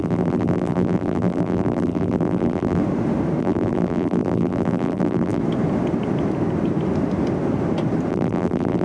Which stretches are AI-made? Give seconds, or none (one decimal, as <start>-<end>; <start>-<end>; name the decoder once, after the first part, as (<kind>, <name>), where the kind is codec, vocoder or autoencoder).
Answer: 0.0-2.8 (vocoder, BigVGAN v2); 3.4-5.4; 8.1-8.8